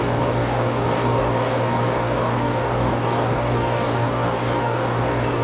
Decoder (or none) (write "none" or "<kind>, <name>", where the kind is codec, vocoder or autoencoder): codec, DAC